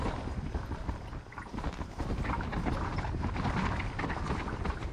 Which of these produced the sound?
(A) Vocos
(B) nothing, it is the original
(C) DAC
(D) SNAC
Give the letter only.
B